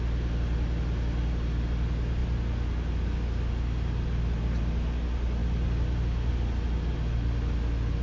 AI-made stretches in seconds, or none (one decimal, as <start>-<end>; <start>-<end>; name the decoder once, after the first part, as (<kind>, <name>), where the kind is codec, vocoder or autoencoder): none